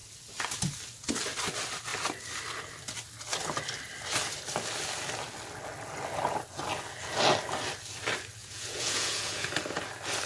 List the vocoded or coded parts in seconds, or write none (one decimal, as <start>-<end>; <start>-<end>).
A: 8.4-9.5